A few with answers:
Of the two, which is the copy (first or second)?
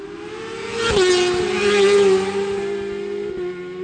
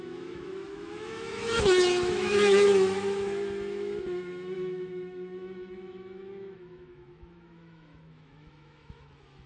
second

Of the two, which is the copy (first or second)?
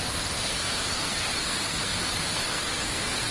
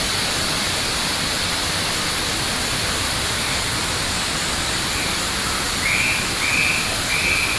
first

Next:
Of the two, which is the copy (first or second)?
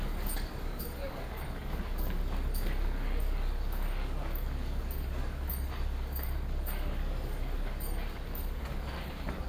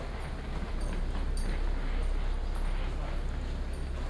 first